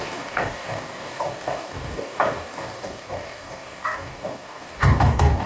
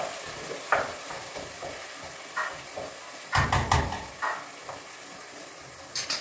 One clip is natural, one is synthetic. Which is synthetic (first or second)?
first